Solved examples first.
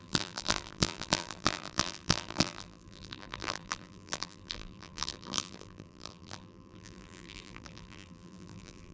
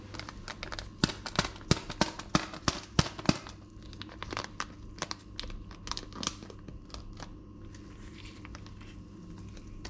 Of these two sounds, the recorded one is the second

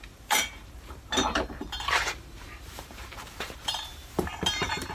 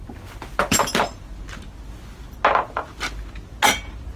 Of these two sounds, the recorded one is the second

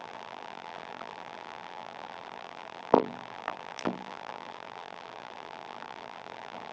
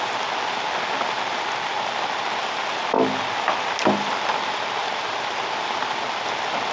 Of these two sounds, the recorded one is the second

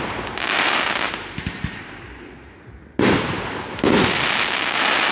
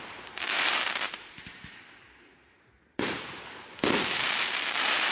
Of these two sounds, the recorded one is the first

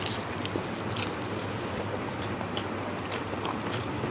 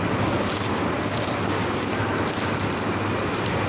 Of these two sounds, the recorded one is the second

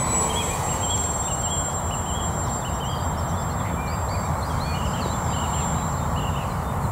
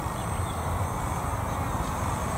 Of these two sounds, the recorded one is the first